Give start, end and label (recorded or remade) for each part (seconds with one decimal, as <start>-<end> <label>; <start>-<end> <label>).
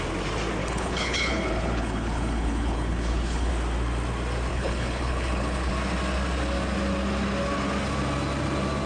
0.0-0.6 recorded; 0.6-3.5 remade; 3.5-4.5 recorded; 4.5-5.7 remade; 5.7-8.9 recorded